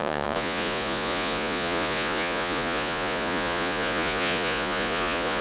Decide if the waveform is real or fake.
fake